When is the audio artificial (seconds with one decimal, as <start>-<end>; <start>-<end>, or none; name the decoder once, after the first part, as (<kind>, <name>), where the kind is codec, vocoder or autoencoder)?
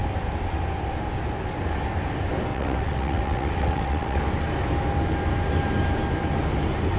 2.5-4.2 (vocoder, WaveNeXt)